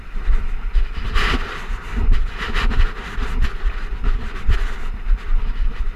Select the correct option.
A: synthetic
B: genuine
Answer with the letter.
B